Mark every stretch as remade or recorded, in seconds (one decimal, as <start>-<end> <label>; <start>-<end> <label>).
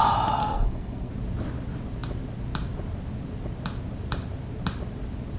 0.0-0.4 recorded; 0.4-1.1 remade; 1.1-5.4 recorded